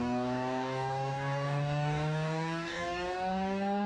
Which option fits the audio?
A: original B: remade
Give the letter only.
B